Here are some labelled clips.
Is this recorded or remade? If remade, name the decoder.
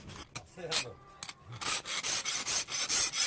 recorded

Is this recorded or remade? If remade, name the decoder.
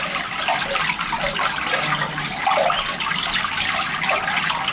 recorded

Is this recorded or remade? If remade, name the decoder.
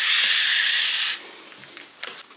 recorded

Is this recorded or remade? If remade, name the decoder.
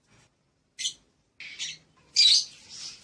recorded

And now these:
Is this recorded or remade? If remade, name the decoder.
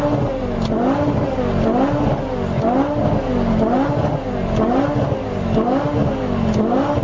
recorded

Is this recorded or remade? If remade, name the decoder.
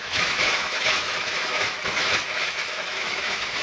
remade, autoencoder, DAC-VAE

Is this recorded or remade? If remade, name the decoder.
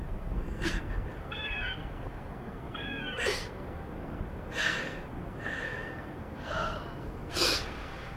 remade, codec, SNAC